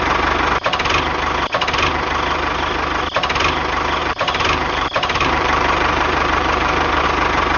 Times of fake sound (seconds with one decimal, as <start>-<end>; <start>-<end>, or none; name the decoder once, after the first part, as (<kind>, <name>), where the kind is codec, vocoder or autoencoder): 4.0-7.0 (vocoder, BigVGAN v2)